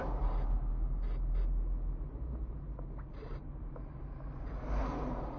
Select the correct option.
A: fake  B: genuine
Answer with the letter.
B